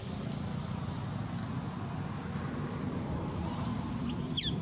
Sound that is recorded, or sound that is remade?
recorded